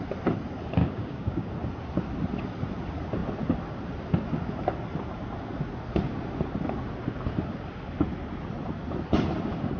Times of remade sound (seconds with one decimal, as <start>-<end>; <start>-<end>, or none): 0.8-1.5